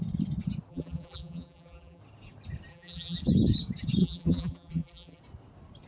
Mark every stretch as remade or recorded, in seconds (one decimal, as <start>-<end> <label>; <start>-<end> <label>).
0.0-0.7 recorded; 0.7-2.0 remade; 2.0-2.7 recorded; 2.7-3.2 remade; 3.2-4.0 recorded; 4.0-5.2 remade; 5.2-5.9 recorded